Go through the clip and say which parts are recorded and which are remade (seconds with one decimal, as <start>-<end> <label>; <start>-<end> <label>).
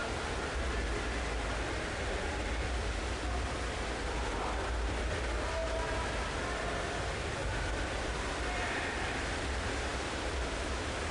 0.0-9.9 recorded; 9.9-10.7 remade; 10.7-11.1 recorded